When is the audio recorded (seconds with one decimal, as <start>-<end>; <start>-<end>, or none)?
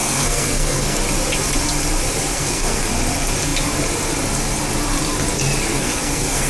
1.0-2.3; 2.8-5.7